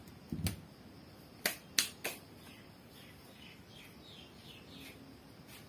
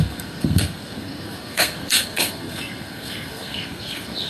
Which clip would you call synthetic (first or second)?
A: second